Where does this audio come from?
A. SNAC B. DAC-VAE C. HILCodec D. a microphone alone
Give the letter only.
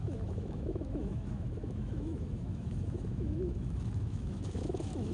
B